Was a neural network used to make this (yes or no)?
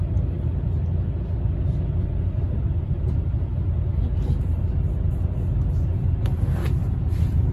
no